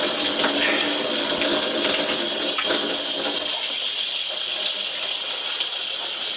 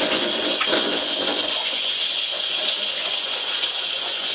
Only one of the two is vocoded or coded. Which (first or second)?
second